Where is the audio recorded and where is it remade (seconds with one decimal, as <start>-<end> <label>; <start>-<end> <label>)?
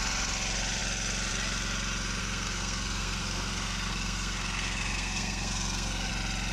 0.0-2.2 recorded; 2.2-6.1 remade; 6.1-6.5 recorded